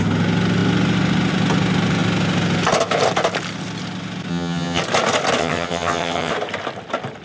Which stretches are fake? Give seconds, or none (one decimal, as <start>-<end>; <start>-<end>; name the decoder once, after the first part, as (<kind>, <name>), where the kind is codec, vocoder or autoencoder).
4.3-4.8 (vocoder, HiFi-GAN); 5.4-6.3